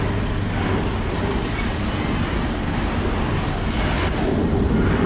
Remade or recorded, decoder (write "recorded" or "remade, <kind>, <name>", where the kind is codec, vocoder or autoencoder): recorded